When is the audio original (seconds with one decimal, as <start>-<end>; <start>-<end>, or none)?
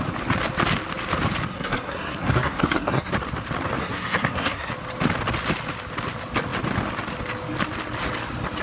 0.0-1.5; 3.1-3.8; 4.7-8.6